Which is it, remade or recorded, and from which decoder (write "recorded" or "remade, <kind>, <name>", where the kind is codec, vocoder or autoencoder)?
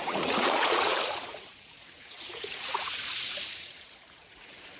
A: remade, vocoder, Vocos